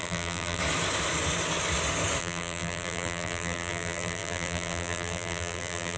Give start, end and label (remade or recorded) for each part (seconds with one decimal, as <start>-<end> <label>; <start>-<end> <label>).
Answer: 0.0-0.6 remade; 0.6-2.2 recorded; 2.2-6.0 remade